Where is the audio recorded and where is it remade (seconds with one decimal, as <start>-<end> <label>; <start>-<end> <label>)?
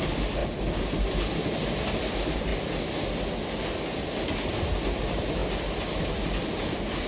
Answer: 0.0-2.5 remade; 2.5-4.4 recorded; 4.4-5.4 remade; 5.4-6.0 recorded; 6.0-7.1 remade